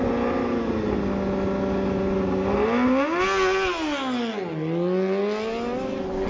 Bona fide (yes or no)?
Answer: yes